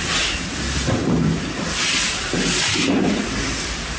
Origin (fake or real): real